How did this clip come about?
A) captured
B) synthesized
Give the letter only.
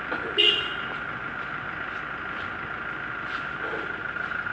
A